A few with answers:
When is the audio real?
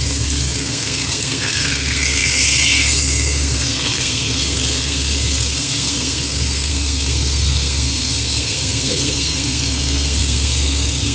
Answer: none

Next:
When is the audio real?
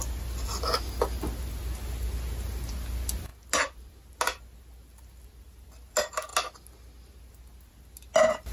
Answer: 0.0-8.5